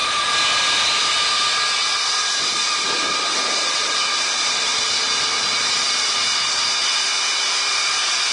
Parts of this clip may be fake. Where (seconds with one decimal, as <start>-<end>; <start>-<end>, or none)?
none